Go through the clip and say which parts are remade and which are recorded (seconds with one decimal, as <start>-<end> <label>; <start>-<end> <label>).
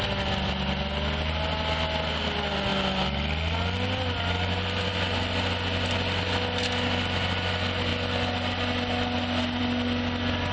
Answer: 0.0-10.5 recorded